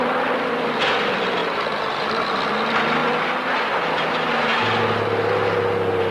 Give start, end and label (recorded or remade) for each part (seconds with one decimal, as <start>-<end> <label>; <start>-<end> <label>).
0.0-1.4 remade; 1.4-2.0 recorded; 2.0-3.0 remade; 3.0-3.8 recorded; 3.8-4.5 remade; 4.5-6.1 recorded